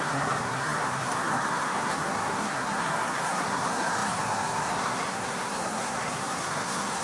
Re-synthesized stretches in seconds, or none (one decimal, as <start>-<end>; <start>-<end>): 0.0-7.0